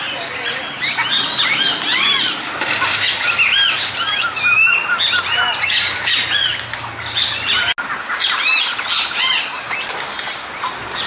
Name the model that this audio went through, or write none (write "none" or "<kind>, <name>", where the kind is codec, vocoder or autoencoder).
none